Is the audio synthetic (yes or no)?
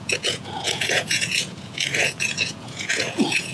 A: yes